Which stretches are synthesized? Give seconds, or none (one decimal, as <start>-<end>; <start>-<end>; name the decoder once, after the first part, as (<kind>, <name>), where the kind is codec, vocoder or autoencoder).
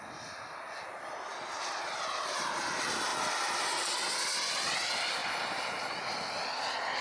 1.3-2.7 (vocoder, BigVGAN v2)